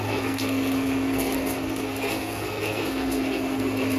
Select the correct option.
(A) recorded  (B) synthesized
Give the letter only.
B